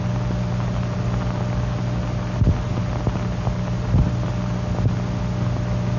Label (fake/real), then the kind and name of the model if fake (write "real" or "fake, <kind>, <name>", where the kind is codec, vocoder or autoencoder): real